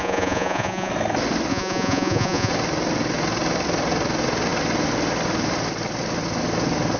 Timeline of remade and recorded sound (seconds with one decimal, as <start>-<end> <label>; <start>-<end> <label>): 0.0-0.9 remade; 0.9-1.5 recorded; 1.5-2.5 remade; 2.5-7.0 recorded